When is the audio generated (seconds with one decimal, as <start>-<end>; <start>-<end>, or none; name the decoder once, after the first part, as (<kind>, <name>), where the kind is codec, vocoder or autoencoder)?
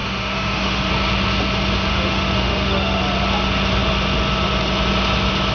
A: 0.0-0.9 (autoencoder, DAC-VAE); 1.9-3.0